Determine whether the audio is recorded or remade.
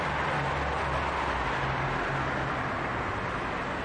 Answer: recorded